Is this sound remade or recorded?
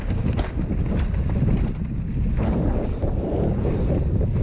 remade